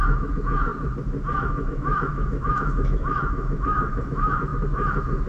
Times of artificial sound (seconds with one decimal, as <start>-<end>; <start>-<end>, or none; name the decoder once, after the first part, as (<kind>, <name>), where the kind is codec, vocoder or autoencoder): 0.0-0.7 (autoencoder, DAC-VAE); 1.3-5.3